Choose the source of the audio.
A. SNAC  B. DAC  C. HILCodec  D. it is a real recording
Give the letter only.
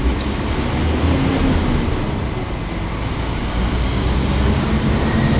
D